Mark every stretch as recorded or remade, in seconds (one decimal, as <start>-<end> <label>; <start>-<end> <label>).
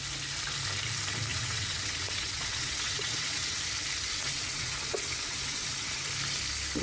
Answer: 0.0-1.3 recorded; 1.3-3.6 remade; 3.6-4.1 recorded; 4.1-6.1 remade; 6.1-6.8 recorded